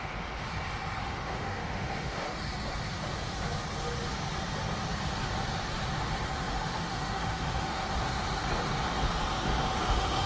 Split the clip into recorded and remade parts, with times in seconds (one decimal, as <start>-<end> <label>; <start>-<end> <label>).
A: 0.0-0.5 remade; 0.5-1.0 recorded; 1.0-2.3 remade; 2.3-6.5 recorded; 6.5-7.8 remade; 7.8-9.8 recorded; 9.8-10.3 remade